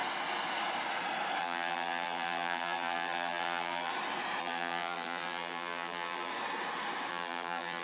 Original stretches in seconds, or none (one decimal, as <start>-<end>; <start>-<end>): 0.0-1.4; 3.9-4.4; 6.3-7.1